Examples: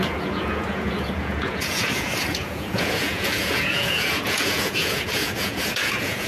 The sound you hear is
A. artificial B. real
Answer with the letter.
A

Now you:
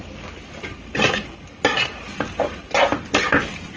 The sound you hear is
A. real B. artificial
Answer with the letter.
A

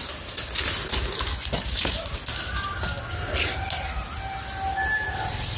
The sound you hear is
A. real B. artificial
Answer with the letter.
A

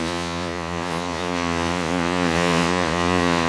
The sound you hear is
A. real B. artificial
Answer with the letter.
B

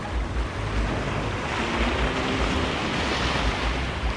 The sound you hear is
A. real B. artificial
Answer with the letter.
A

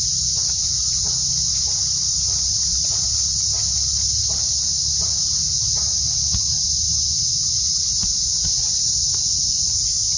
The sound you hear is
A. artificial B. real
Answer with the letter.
B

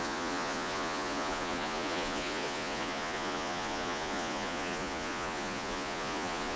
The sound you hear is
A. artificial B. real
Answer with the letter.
A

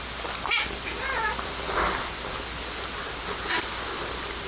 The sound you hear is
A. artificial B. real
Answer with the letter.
B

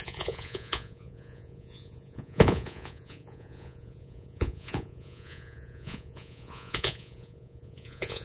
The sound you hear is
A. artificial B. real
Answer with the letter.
A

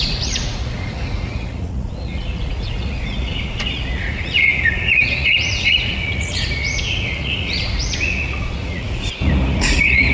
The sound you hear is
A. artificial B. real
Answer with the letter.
A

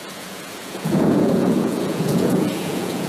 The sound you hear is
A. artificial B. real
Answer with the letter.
A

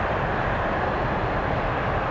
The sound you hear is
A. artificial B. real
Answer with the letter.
B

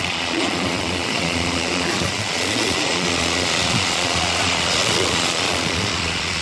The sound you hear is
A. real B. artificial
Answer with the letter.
B